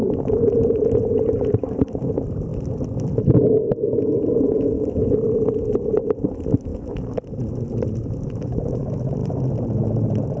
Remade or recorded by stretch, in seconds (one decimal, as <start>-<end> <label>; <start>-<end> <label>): 0.0-2.5 remade; 2.5-4.1 recorded; 4.1-5.0 remade; 5.0-5.9 recorded; 5.9-6.7 remade; 6.7-7.4 recorded; 7.4-10.4 remade